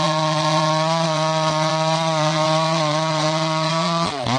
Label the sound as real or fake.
fake